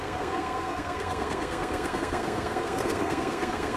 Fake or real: fake